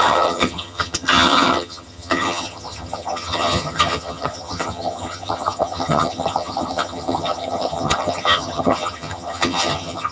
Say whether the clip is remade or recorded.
remade